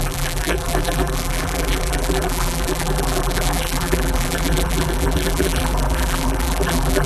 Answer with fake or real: fake